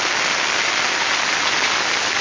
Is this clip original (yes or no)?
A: yes